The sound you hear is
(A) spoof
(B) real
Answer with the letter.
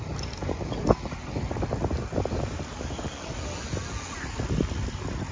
B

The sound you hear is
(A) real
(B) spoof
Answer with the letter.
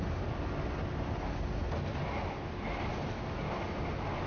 A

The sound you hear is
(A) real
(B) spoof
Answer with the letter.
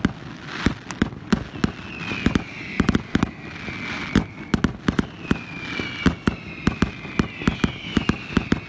A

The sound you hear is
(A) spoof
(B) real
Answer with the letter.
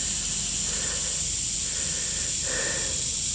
B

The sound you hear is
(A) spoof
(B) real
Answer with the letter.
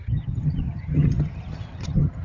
A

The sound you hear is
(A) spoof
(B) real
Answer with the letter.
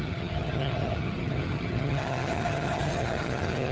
A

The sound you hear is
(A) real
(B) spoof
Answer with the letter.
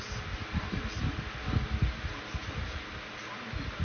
A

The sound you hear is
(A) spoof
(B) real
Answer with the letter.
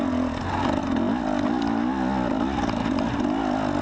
B